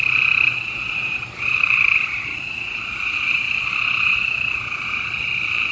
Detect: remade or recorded remade